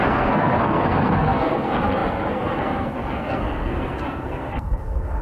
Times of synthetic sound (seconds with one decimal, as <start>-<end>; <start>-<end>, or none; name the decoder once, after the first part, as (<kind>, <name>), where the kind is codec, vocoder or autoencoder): 0.0-5.2 (codec, SNAC)